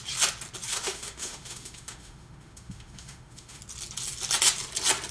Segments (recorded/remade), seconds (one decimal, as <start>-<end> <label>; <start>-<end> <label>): 0.0-0.7 recorded; 0.7-3.6 remade; 3.6-5.1 recorded